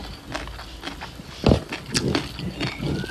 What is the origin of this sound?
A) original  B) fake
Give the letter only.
A